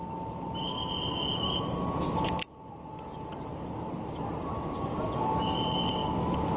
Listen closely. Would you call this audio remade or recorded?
recorded